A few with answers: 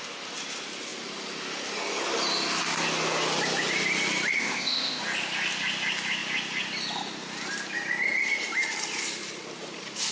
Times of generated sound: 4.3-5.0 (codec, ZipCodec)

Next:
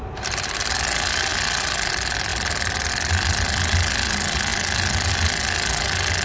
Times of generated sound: none

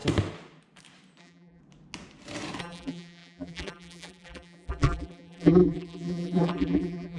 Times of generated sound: 1.2-1.6 (vocoder, BigVGAN v2); 2.6-7.2